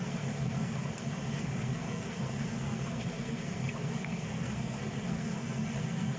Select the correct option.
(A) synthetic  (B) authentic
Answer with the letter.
A